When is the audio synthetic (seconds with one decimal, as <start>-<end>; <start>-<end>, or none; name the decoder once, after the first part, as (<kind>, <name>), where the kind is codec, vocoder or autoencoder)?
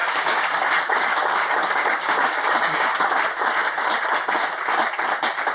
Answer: 0.0-0.7 (codec, DAC); 1.1-3.1